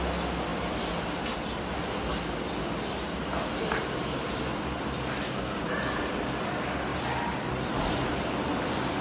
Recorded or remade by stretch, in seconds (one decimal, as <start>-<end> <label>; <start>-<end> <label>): 0.0-6.9 recorded; 6.9-8.1 remade; 8.1-9.0 recorded